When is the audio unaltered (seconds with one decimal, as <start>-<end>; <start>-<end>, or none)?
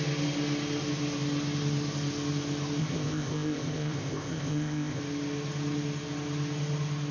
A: 0.0-2.8; 5.0-7.1